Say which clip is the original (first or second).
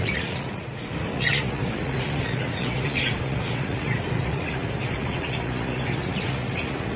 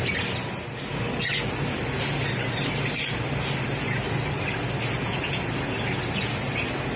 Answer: second